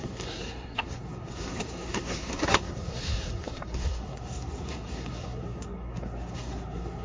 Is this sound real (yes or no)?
no